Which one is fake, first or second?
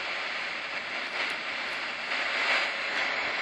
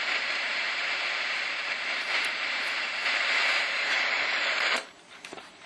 second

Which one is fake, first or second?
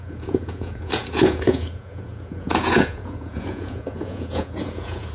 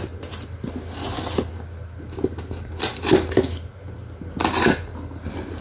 first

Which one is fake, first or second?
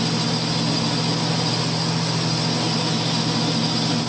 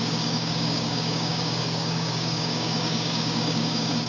second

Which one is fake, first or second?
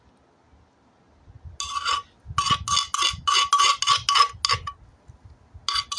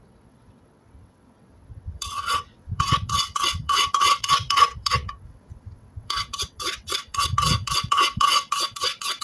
second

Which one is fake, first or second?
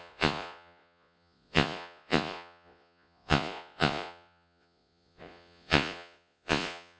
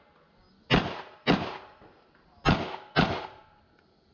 first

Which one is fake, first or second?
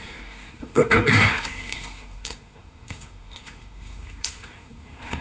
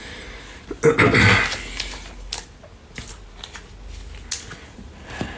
first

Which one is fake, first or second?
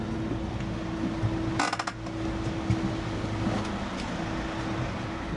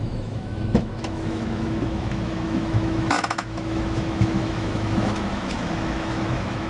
second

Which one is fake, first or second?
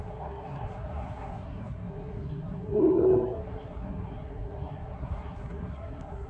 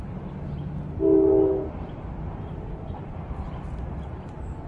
first